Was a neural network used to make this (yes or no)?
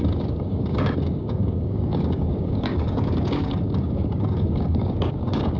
yes